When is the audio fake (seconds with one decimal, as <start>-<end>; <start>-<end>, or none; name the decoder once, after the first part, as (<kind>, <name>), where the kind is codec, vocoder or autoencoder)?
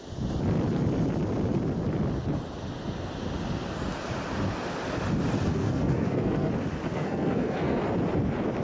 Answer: 5.5-6.5 (codec, SNAC); 6.9-7.8